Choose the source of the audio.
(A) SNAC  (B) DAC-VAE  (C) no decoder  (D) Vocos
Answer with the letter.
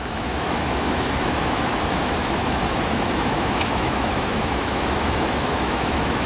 B